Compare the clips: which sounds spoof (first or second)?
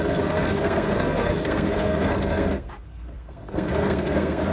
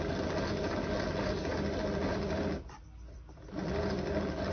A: first